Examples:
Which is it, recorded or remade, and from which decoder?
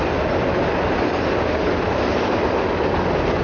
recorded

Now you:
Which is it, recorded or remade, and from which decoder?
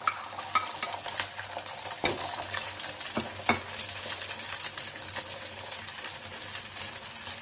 recorded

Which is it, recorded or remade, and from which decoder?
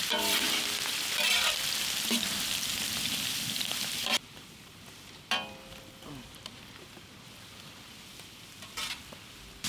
remade, vocoder, BigVGAN v2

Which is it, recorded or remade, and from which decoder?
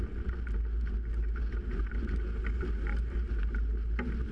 recorded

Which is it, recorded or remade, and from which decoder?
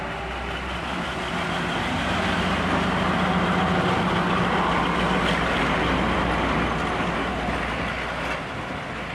recorded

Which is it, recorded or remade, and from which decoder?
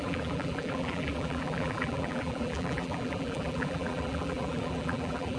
remade, vocoder, BigVGAN v2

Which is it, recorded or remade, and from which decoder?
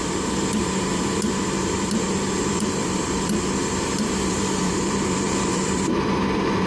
remade, vocoder, BigVGAN v2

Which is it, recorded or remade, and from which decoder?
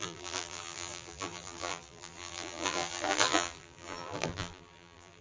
remade, vocoder, BigVGAN v2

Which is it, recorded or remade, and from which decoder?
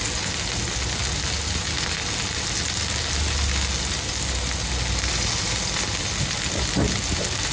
recorded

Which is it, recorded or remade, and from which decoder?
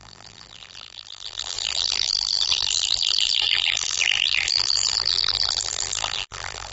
remade, vocoder, BigVGAN v2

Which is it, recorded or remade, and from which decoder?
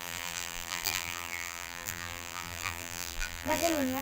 remade, vocoder, BigVGAN v2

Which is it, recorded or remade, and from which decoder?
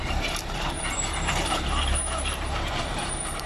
remade, vocoder, BigVGAN v2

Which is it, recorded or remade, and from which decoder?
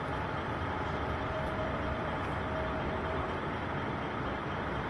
remade, vocoder, BigVGAN v2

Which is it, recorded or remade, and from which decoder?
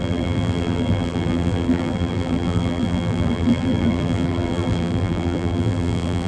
remade, vocoder, BigVGAN v2